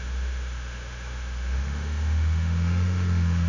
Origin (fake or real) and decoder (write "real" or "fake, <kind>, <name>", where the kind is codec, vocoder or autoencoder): fake, autoencoder, DAC-VAE